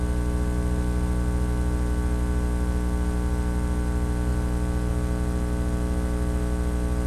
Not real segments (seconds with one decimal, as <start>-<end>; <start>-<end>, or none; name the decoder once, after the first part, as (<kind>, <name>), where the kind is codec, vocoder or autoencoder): none